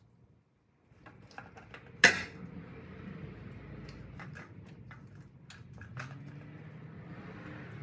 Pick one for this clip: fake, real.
real